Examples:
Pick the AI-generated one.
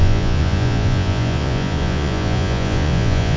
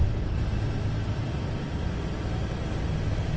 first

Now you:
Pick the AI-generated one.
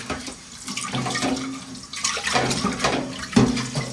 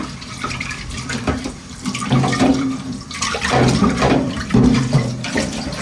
second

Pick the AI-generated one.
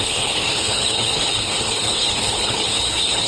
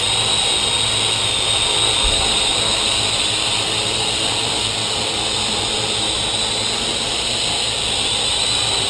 first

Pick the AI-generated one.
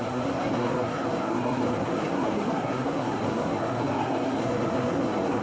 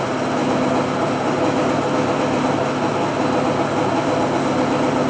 first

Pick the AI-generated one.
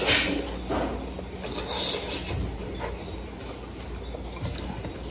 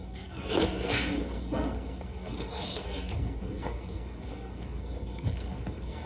second